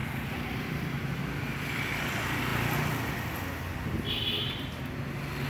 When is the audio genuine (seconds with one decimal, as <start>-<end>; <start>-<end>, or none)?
1.2-5.5